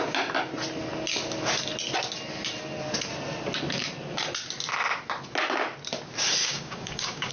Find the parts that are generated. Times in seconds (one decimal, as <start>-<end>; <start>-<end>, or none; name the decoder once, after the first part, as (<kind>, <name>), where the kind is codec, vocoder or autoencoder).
6.4-7.3 (codec, DAC)